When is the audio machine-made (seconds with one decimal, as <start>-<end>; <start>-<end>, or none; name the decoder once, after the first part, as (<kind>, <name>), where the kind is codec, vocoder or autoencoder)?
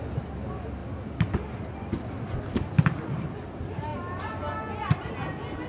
none